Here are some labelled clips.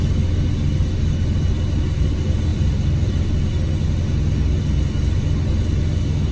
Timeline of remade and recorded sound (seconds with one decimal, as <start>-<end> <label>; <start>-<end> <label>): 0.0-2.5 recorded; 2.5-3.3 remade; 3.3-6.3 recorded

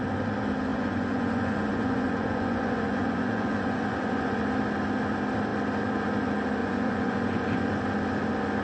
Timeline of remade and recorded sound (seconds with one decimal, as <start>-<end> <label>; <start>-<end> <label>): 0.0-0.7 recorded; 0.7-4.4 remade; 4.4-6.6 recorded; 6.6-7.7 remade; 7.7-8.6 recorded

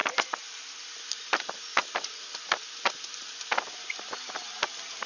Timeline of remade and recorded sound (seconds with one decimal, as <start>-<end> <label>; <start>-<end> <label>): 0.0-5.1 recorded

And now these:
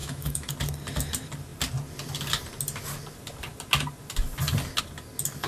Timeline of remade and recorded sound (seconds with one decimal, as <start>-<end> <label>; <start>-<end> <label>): 0.0-0.5 remade; 0.5-5.5 recorded

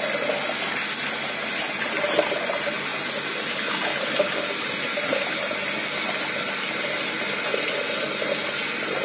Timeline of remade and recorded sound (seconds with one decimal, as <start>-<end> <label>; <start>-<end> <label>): 0.0-9.0 recorded